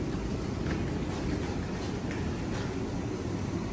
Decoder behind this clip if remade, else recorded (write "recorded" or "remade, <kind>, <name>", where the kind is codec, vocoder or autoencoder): recorded